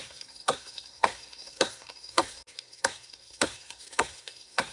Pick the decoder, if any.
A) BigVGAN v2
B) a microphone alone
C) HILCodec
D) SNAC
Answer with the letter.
D